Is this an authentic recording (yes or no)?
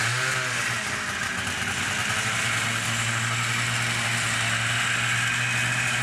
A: yes